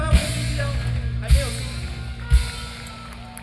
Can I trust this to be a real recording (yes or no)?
yes